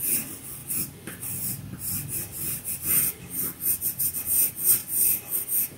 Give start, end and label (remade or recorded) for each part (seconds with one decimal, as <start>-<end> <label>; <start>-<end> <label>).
0.0-5.8 recorded